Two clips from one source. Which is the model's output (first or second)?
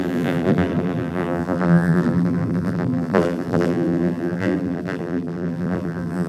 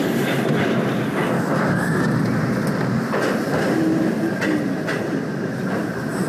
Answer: first